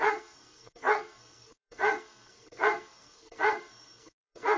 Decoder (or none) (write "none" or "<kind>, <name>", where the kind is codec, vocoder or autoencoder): codec, SNAC